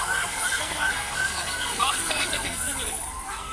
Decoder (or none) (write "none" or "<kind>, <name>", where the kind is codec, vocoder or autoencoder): codec, SNAC